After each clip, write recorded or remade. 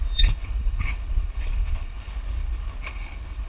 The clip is remade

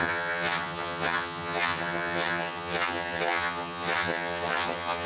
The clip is remade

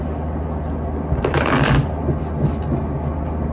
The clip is recorded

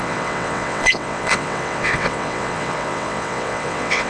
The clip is remade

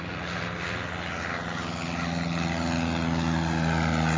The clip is recorded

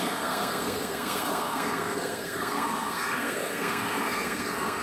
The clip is remade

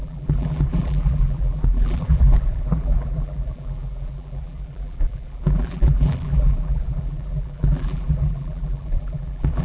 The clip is remade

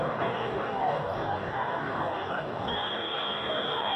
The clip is remade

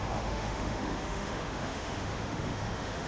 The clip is remade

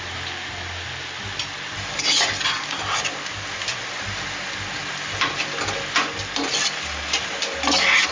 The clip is recorded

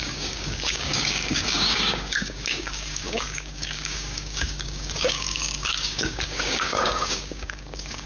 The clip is remade